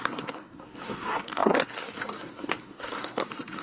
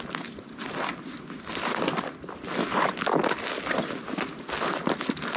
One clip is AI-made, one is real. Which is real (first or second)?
second